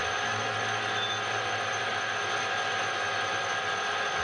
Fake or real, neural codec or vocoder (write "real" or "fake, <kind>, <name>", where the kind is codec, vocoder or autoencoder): real